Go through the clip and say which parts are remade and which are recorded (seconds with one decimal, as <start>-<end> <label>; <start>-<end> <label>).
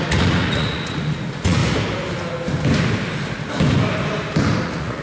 0.0-1.6 remade; 1.6-4.6 recorded; 4.6-5.0 remade